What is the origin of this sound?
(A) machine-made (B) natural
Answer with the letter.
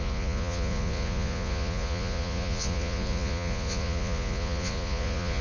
A